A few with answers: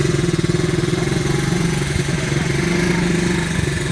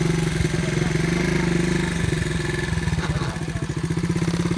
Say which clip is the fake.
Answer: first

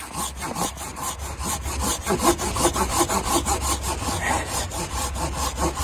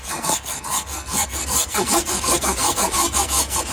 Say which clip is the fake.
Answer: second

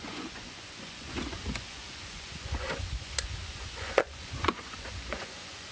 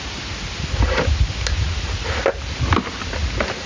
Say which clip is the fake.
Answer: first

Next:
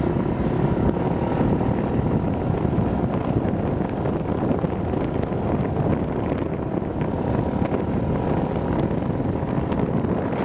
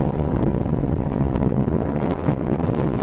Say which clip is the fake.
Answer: second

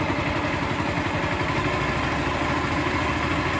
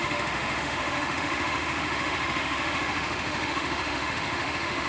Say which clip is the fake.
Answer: second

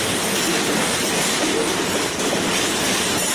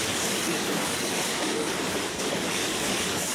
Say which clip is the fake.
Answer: second